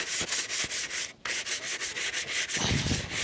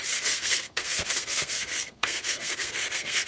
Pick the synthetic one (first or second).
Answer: second